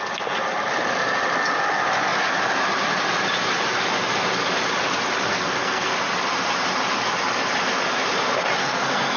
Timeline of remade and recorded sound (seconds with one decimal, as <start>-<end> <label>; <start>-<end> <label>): 0.0-5.3 recorded; 5.3-5.9 remade; 5.9-8.6 recorded; 8.6-9.2 remade